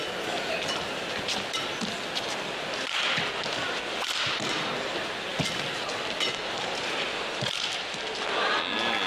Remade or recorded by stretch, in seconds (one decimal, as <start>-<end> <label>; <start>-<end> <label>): 0.0-9.1 recorded